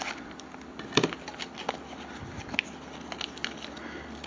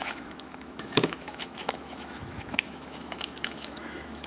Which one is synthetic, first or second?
second